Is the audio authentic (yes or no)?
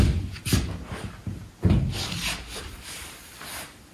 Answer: yes